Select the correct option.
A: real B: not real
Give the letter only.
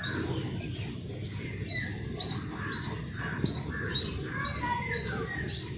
A